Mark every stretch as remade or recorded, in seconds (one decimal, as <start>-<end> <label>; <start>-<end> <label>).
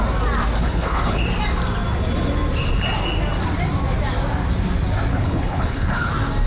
0.0-0.6 recorded; 0.6-1.2 remade; 1.2-5.1 recorded; 5.1-6.1 remade; 6.1-6.5 recorded